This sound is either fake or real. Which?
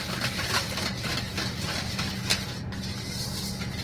real